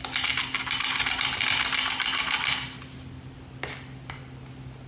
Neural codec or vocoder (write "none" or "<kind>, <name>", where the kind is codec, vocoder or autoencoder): none